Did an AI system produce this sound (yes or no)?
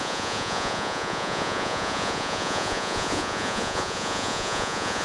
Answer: yes